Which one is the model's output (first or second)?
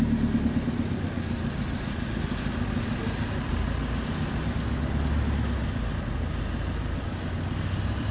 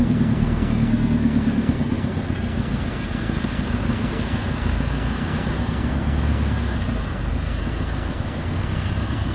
second